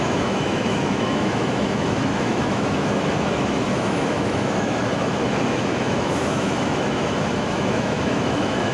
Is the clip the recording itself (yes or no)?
no